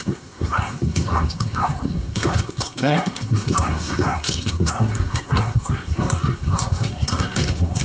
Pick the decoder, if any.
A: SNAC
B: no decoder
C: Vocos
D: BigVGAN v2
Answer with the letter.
A